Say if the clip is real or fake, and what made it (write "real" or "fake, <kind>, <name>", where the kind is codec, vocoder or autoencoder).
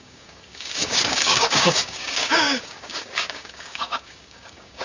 fake, codec, DAC